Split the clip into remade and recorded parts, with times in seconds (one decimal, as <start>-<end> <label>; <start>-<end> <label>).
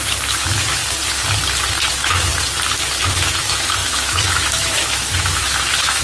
0.0-0.8 remade; 0.8-1.9 recorded; 1.9-2.3 remade; 2.3-3.1 recorded; 3.1-6.0 remade